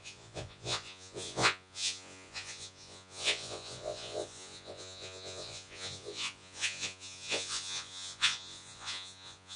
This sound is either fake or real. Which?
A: fake